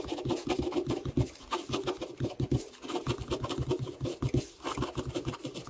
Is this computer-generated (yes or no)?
yes